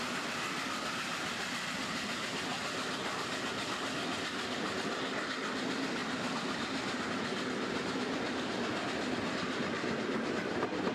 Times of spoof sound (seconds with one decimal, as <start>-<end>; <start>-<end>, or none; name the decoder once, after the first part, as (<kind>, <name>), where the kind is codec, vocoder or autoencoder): none